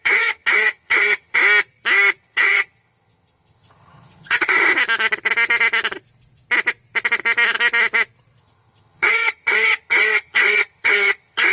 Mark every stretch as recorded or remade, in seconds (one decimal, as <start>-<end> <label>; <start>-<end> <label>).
0.0-1.4 remade; 1.4-2.2 recorded; 2.2-4.7 remade; 4.7-8.4 recorded; 8.4-11.5 remade